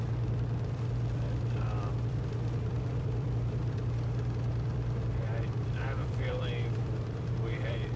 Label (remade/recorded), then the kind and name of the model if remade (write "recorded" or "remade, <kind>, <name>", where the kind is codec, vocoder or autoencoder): remade, vocoder, BigVGAN v2